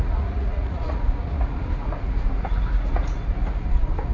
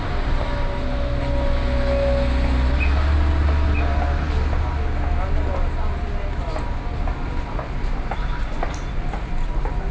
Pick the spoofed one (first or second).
first